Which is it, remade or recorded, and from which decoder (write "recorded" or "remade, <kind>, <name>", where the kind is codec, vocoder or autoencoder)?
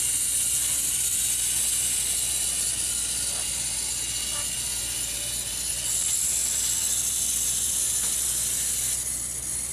recorded